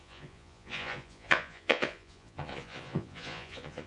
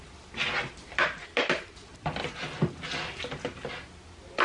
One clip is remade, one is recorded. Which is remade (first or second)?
first